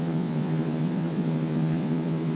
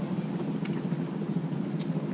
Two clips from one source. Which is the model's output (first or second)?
first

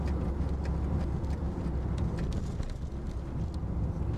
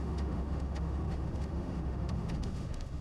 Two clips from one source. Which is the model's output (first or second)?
second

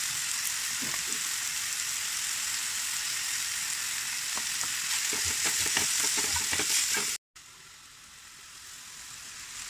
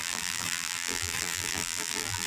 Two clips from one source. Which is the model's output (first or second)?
second